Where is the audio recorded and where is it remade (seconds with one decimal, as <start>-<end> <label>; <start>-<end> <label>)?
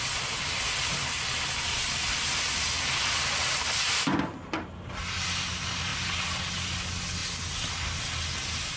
0.0-8.8 recorded